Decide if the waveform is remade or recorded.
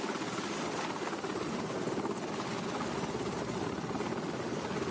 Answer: recorded